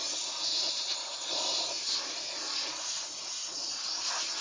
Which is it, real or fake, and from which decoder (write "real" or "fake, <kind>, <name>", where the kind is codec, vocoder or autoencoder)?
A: real